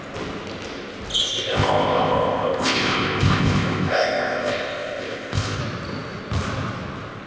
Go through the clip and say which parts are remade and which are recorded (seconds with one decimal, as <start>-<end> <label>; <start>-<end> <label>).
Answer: 0.0-1.2 recorded; 1.2-5.6 remade; 5.6-7.3 recorded